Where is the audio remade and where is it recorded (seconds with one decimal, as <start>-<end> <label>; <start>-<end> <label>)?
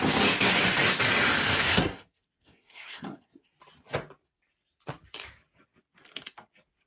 0.0-1.6 recorded; 1.6-3.5 remade; 3.5-6.9 recorded